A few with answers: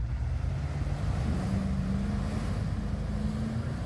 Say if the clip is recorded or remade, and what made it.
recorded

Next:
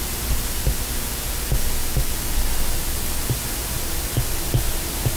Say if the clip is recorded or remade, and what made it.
recorded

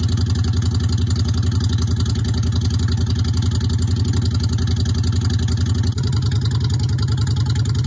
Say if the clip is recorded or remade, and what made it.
recorded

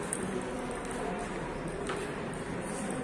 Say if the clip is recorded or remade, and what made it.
recorded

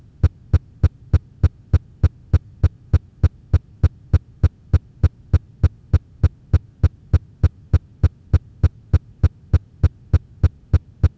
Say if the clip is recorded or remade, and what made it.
recorded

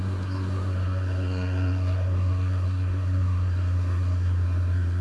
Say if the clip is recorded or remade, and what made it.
remade, codec, SNAC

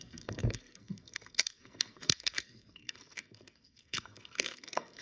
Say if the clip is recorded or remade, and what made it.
remade, codec, SNAC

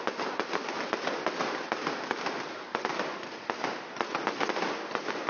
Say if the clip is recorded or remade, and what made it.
recorded